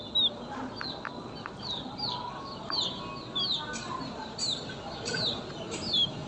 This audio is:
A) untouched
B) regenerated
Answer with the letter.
A